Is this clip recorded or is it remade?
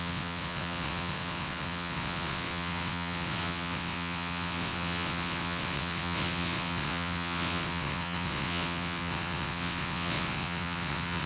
remade